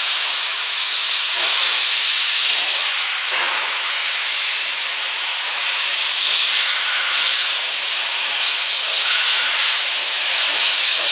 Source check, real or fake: fake